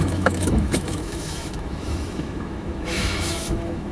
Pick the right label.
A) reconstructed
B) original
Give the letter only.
A